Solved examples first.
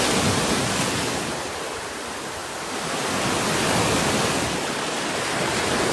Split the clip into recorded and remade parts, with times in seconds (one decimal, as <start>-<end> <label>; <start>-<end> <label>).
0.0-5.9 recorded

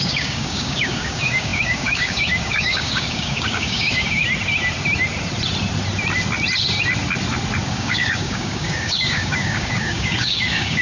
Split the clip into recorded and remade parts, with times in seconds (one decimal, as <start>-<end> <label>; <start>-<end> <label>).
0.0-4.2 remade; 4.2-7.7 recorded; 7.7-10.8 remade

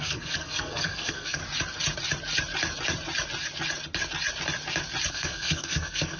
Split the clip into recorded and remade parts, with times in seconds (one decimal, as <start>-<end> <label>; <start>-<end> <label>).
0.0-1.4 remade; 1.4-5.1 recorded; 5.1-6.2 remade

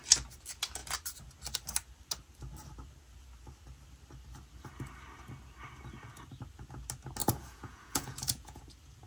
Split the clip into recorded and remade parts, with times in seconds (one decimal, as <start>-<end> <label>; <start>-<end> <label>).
0.0-7.2 recorded; 7.2-8.6 remade; 8.6-9.1 recorded